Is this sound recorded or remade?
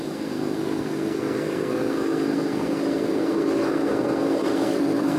remade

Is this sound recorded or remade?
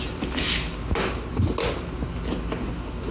recorded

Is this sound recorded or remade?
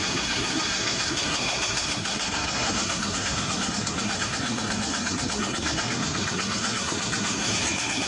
remade